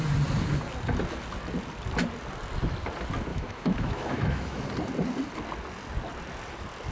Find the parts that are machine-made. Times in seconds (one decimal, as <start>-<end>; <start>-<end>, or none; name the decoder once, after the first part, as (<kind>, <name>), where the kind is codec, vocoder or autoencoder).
3.3-4.6 (autoencoder, DAC-VAE)